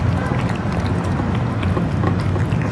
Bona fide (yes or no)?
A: yes